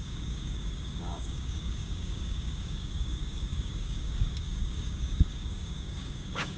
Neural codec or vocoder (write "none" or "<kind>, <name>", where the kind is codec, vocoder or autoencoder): codec, DAC